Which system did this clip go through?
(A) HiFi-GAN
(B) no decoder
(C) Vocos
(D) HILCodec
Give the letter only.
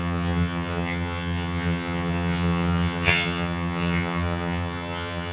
A